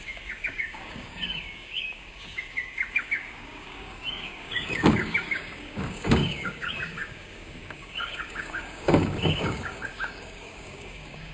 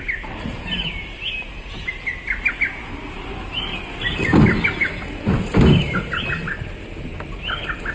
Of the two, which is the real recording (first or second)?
second